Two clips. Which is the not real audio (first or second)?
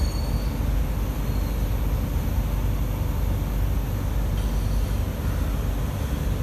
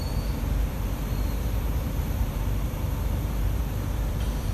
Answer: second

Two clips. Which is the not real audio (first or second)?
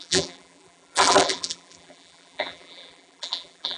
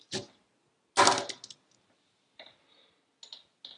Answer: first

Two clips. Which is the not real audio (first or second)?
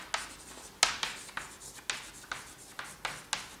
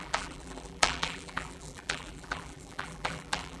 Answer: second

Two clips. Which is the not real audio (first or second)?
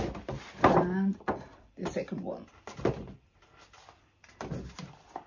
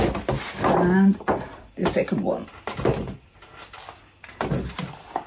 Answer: first